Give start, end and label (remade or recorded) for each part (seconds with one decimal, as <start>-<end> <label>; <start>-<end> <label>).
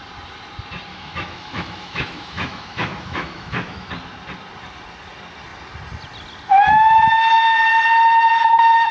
0.0-0.9 recorded; 0.9-3.9 remade; 3.9-8.9 recorded